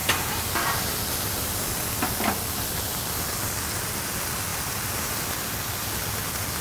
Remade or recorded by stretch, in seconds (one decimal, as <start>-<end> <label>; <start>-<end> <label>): 0.0-0.8 remade; 0.8-4.5 recorded; 4.5-5.1 remade; 5.1-6.6 recorded